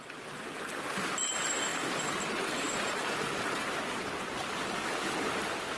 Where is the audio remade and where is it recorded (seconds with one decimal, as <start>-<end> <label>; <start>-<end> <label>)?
0.0-5.8 recorded